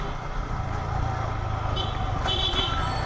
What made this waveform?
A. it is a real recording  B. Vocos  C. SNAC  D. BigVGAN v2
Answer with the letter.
A